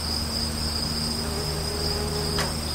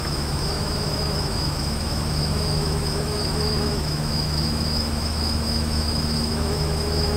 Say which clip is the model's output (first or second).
second